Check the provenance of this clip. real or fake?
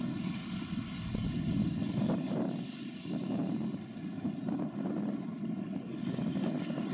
real